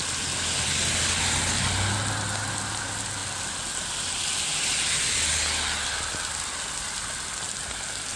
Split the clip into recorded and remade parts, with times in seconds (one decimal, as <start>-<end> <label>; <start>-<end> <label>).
0.0-8.2 recorded